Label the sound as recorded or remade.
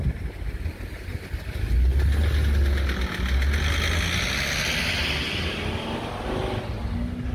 recorded